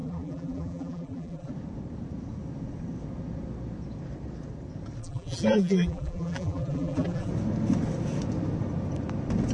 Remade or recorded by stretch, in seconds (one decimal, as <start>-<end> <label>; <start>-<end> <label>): 0.0-1.5 remade; 1.5-5.0 recorded; 5.0-7.3 remade; 7.3-9.5 recorded